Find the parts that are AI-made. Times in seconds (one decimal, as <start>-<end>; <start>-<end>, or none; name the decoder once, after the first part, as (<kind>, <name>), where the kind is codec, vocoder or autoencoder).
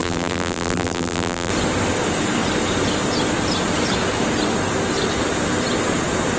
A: 0.0-1.5 (vocoder, BigVGAN v2)